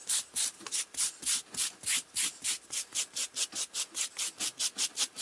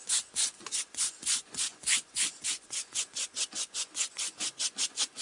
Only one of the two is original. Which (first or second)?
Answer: first